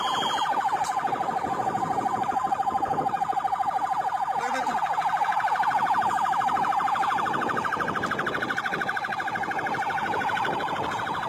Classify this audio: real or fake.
real